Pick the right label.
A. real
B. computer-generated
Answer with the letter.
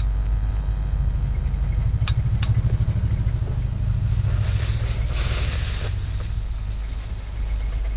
A